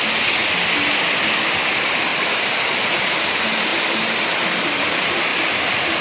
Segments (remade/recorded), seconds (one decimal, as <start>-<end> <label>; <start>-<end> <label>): 0.0-2.1 recorded; 2.1-2.7 remade; 2.7-3.7 recorded; 3.7-4.8 remade; 4.8-5.3 recorded; 5.3-6.0 remade